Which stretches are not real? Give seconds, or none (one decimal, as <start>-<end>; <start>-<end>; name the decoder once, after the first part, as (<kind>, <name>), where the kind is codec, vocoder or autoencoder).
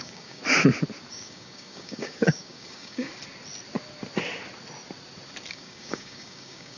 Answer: 0.0-0.4 (codec, DAC); 1.1-3.1; 5.5-6.8